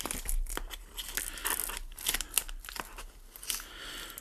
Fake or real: real